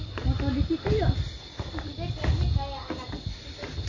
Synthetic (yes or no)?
no